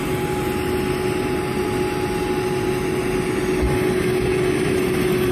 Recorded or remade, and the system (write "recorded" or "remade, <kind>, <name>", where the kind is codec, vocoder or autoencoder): recorded